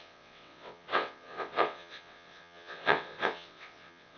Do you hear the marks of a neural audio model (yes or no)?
yes